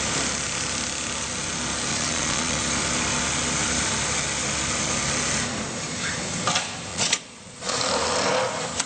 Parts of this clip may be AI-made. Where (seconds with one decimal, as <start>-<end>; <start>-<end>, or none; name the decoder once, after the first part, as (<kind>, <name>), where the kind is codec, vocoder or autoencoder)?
1.9-2.6 (vocoder, Vocos); 6.9-7.8